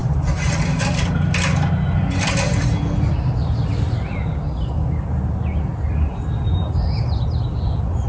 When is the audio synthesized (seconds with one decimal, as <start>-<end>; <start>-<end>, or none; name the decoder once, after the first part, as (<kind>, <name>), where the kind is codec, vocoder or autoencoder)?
0.0-1.0 (vocoder, BigVGAN v2)